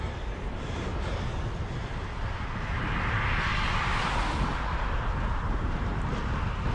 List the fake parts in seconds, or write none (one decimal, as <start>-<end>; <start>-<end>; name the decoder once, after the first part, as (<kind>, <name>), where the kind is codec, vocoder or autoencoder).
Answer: 0.0-0.9 (vocoder, BigVGAN v2); 2.6-6.7